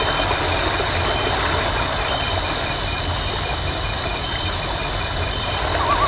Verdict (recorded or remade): recorded